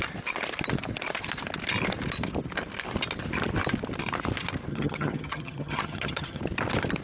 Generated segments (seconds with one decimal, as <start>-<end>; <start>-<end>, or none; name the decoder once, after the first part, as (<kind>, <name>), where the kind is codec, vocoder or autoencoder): 4.7-6.4 (vocoder, HiFi-GAN)